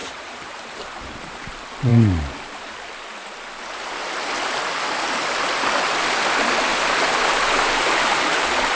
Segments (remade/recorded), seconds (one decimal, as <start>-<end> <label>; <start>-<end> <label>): 0.0-1.5 remade; 1.5-1.9 recorded; 1.9-2.7 remade; 2.7-6.7 recorded; 6.7-8.4 remade; 8.4-8.8 recorded